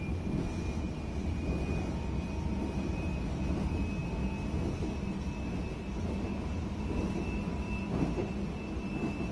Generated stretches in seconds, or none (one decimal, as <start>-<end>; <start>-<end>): 2.5-3.2; 6.3-7.8